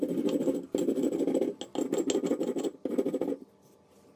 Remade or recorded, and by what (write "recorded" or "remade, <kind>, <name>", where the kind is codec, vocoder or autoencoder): recorded